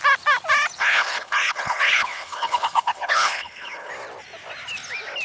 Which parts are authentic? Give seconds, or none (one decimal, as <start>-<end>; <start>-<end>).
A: 0.0-0.8; 3.9-5.2

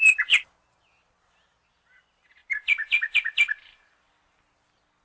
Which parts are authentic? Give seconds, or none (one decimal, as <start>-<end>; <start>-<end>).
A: 0.0-2.4; 4.5-5.0